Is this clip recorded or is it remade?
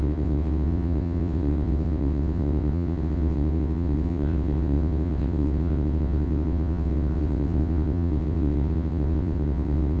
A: remade